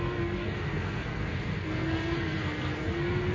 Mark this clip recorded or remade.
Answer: remade